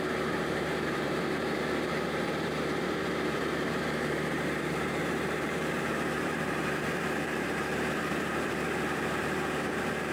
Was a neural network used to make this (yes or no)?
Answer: yes